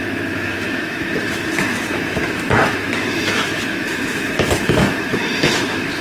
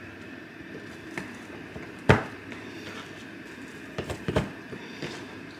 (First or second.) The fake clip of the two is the first